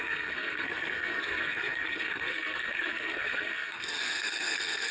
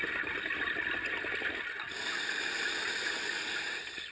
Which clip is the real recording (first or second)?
second